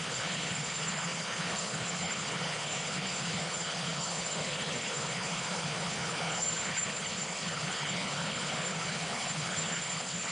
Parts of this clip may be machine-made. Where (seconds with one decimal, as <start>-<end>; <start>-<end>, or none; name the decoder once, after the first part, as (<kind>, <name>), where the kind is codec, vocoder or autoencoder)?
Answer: 0.0-10.3 (codec, HILCodec)